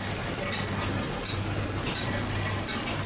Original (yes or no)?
yes